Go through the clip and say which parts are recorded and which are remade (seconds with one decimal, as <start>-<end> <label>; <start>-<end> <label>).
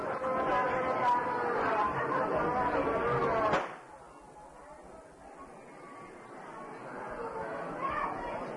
0.0-8.6 recorded